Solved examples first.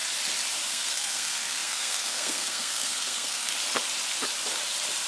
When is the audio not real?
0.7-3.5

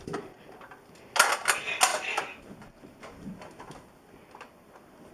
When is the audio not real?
none

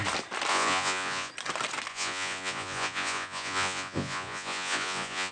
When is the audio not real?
0.5-1.3; 1.9-5.3

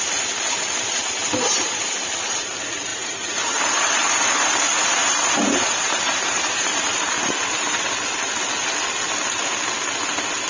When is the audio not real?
1.0-1.8; 2.9-7.9

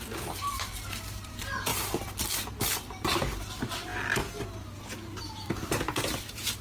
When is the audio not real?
0.0-1.7; 2.5-3.9; 5.2-6.6

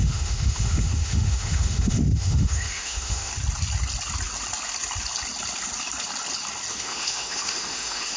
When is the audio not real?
0.0-3.3; 6.7-8.2